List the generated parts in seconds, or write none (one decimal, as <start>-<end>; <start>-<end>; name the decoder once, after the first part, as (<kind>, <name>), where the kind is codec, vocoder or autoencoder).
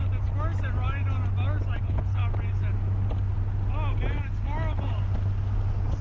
1.8-2.2 (codec, HILCodec)